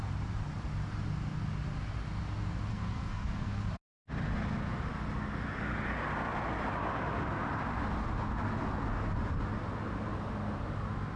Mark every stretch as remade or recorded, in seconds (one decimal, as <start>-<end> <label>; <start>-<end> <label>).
0.0-2.7 recorded; 2.7-3.5 remade; 3.5-11.2 recorded